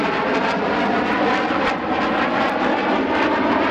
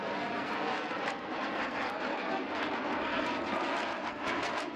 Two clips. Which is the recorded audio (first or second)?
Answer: first